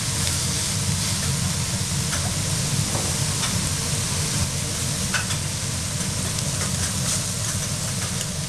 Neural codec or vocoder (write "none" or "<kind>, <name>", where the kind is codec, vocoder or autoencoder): none